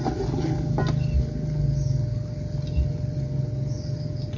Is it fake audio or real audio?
real